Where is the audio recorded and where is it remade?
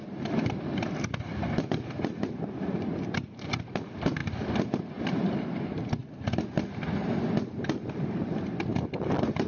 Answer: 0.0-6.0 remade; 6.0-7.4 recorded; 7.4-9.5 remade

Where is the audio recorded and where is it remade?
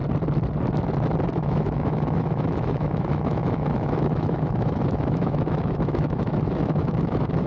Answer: 0.0-1.3 recorded; 1.3-7.5 remade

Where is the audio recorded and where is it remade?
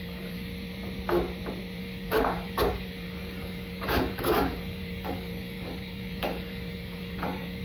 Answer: 0.0-0.5 remade; 0.5-1.8 recorded; 1.8-7.6 remade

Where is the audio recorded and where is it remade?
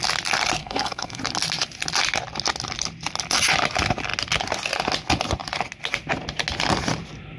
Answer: 0.0-0.6 recorded; 0.6-1.2 remade; 1.2-7.4 recorded